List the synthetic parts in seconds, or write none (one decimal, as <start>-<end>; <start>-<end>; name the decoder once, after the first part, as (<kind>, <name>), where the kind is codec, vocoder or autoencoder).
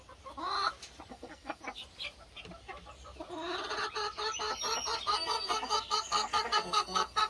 1.1-1.6 (codec, SNAC); 5.1-7.3